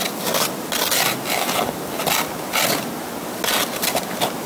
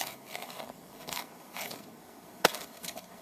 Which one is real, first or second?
first